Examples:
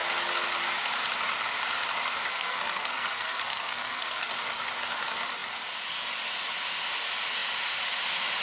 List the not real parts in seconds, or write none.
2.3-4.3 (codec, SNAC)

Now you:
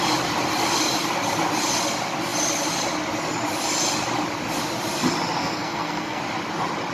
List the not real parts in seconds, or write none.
5.4-6.2 (codec, SNAC)

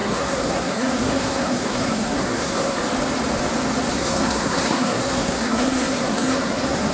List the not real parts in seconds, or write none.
0.0-2.8 (codec, SNAC); 3.9-6.9

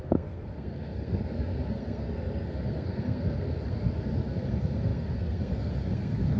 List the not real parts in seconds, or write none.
0.0-6.4 (codec, SNAC)

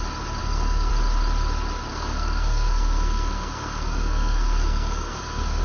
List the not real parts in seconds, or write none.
0.4-0.9 (codec, SNAC); 1.9-5.6